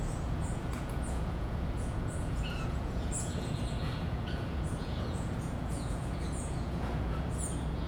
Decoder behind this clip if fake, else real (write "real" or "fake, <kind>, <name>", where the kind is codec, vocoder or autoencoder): fake, vocoder, Vocos